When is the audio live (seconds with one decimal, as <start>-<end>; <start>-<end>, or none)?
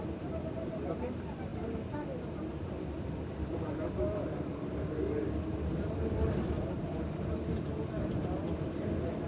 0.0-9.3